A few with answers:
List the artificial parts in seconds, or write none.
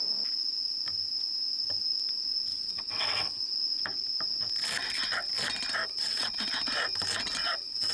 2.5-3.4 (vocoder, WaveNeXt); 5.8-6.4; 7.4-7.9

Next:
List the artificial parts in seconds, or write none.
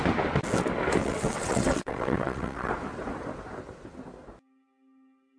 1.0-2.7 (vocoder, WaveNeXt)